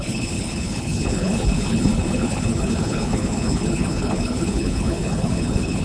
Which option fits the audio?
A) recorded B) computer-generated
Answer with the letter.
B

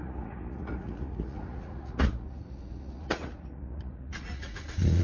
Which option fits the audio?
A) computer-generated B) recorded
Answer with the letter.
A